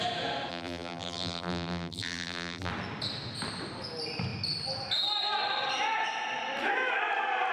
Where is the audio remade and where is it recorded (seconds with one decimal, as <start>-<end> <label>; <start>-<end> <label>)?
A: 0.0-0.5 recorded; 0.5-2.7 remade; 2.7-7.5 recorded